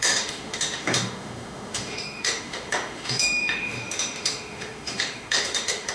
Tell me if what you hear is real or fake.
fake